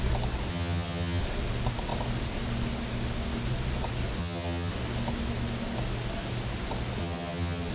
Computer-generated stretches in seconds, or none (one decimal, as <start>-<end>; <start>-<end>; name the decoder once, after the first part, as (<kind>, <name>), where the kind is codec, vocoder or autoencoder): 0.5-1.2 (vocoder, HiFi-GAN); 4.2-4.7; 7.0-7.7